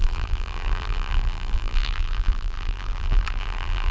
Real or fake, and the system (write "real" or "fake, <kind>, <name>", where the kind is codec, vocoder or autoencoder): fake, vocoder, BigVGAN v2